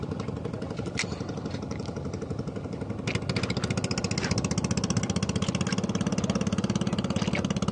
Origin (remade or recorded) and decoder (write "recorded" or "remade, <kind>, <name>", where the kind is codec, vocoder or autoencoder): recorded